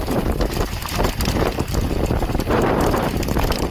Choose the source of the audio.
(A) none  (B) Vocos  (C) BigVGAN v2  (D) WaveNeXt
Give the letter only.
C